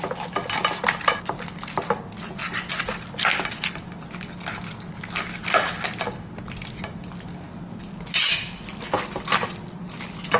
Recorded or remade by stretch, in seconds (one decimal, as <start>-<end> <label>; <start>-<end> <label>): 0.0-10.4 recorded